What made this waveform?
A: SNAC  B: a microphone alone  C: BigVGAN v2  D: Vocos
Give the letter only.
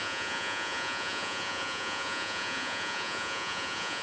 D